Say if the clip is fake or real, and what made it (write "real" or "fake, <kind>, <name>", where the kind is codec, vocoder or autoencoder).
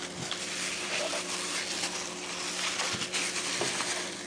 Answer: real